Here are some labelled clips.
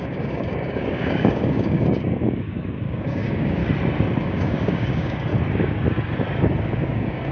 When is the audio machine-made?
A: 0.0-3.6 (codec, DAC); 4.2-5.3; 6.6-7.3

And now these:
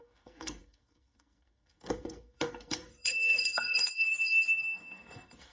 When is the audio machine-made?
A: 0.0-5.5 (codec, SNAC)

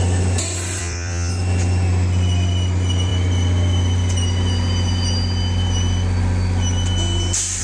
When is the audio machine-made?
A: 0.8-1.3 (vocoder, WaveNeXt)